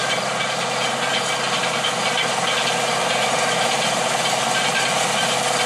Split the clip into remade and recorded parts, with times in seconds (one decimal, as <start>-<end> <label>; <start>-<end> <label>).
0.0-5.7 recorded